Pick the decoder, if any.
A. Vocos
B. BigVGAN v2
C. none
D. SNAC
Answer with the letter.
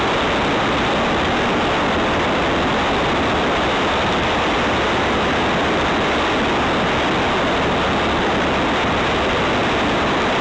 C